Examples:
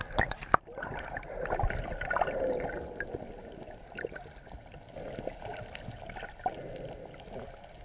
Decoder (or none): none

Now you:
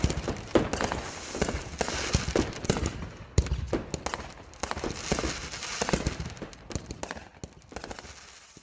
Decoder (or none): none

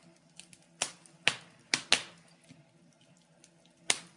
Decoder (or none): none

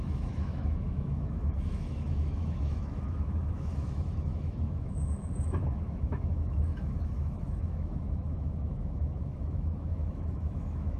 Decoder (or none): autoencoder, DAC-VAE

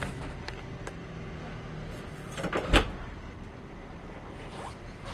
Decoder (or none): none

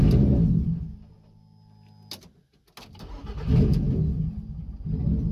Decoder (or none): none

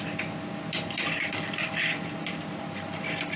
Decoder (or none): none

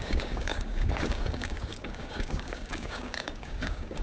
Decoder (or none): codec, DAC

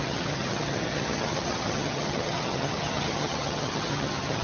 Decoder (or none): vocoder, HiFi-GAN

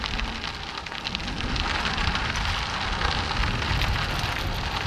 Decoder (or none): none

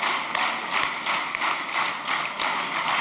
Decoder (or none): none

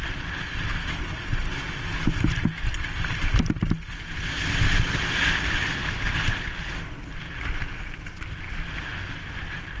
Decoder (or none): none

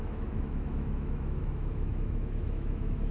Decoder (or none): autoencoder, DAC-VAE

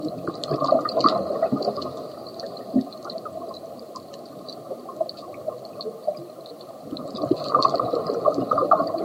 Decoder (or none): none